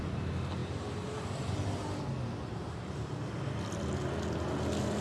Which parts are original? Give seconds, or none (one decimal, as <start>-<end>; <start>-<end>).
0.0-5.0